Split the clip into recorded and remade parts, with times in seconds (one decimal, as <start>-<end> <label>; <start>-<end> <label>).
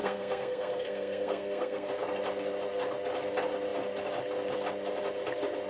0.0-1.9 remade; 1.9-5.7 recorded